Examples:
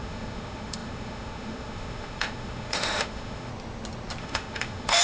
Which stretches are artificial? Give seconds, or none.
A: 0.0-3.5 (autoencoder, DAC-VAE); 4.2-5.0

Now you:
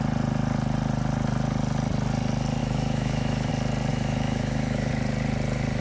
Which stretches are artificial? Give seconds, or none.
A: 2.6-3.5 (autoencoder, DAC-VAE); 3.9-4.9

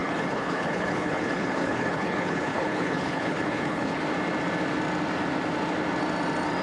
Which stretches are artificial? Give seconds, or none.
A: 0.0-4.0 (codec, HILCodec)

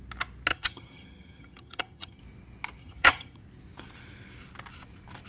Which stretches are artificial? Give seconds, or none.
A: 0.5-2.2 (vocoder, HiFi-GAN); 2.8-3.4

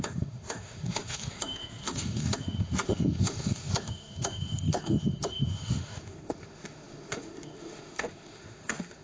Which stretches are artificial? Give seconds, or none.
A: 0.0-9.0 (autoencoder, DAC-VAE)

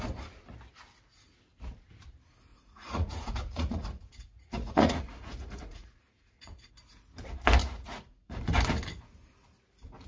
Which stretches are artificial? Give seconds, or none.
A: 2.5-6.7 (vocoder, Vocos); 7.6-8.4

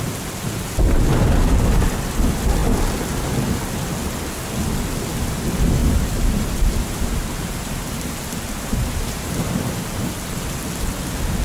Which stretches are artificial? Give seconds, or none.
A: 5.8-9.5 (vocoder, BigVGAN v2)